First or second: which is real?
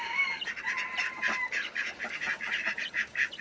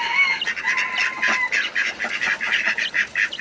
second